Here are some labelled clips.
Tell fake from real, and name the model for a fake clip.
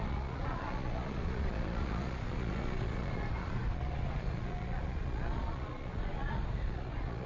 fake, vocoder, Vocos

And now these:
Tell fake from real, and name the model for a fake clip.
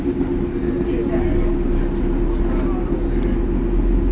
real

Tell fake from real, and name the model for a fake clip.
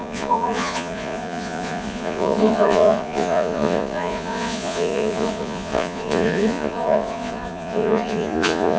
fake, vocoder, Vocos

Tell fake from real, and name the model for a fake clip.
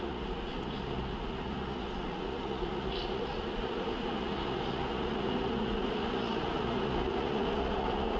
fake, vocoder, Vocos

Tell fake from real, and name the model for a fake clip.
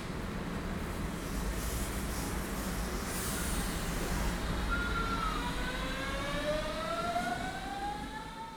real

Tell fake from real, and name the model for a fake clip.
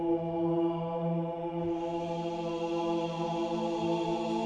real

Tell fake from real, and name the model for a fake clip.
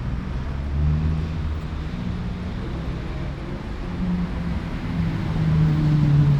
real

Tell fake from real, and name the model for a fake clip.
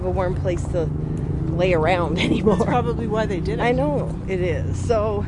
real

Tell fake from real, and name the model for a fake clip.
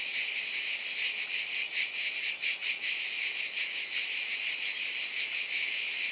real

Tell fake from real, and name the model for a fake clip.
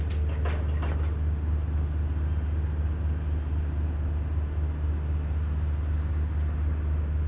real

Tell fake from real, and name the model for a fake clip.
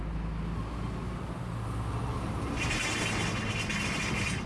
real